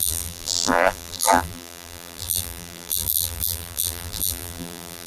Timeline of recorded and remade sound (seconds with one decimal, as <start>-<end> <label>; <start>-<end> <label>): 0.0-5.1 remade